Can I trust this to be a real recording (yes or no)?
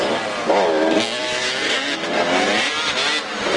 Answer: yes